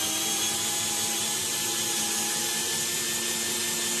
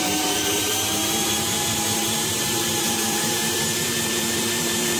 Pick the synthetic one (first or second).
second